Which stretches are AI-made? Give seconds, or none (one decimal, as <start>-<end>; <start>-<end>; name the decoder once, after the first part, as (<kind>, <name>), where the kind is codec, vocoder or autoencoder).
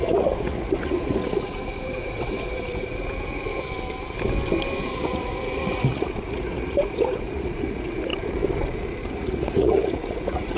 0.0-3.5 (vocoder, Vocos); 4.8-8.1; 9.1-10.6